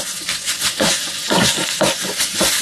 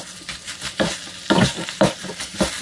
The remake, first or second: first